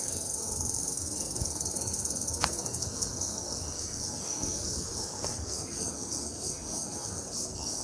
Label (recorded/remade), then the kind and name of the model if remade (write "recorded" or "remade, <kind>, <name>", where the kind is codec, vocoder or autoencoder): remade, codec, SNAC